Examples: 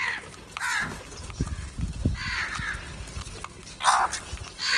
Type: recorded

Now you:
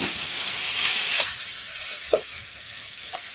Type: remade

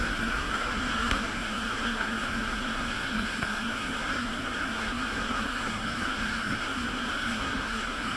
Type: remade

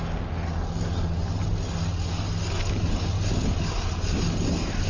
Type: recorded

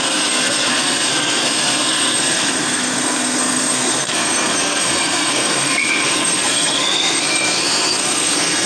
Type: remade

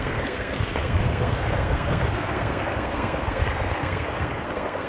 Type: remade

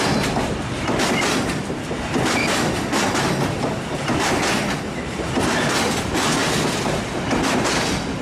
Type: recorded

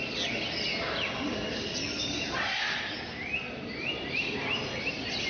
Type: recorded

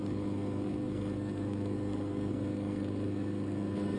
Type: remade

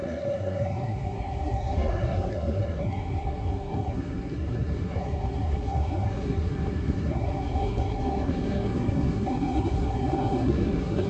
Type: remade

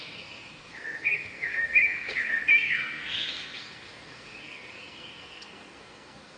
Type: remade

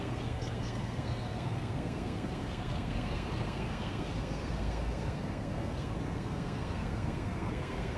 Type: remade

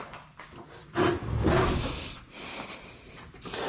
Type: recorded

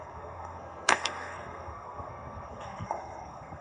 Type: remade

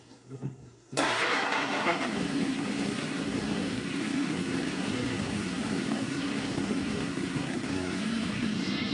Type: remade